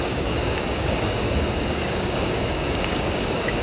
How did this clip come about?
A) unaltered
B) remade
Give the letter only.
B